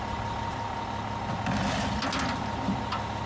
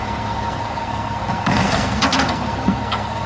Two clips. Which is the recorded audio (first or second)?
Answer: first